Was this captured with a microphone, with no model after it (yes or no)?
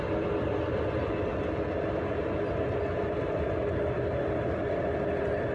yes